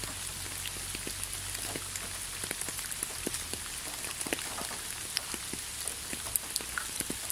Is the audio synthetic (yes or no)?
no